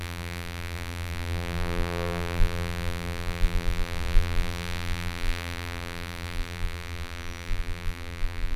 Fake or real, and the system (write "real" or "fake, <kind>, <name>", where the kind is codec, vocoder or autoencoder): fake, vocoder, BigVGAN v2